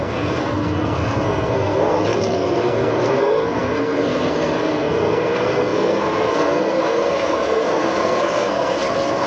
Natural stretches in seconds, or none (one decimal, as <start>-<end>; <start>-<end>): none